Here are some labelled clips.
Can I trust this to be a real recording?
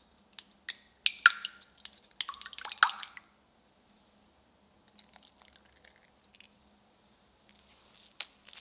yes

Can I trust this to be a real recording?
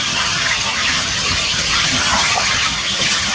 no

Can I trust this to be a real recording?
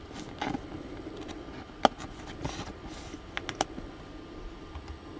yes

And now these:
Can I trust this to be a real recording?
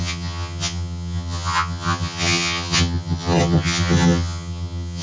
no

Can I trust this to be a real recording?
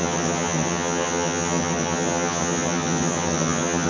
no